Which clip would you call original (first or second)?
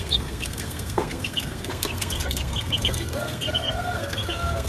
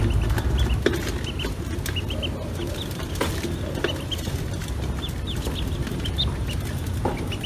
second